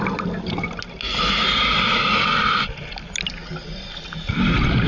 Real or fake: real